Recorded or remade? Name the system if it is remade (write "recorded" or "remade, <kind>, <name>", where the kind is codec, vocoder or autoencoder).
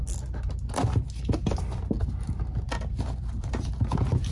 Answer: recorded